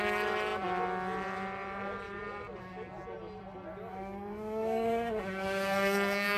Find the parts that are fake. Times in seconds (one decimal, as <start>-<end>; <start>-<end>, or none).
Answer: 3.9-6.4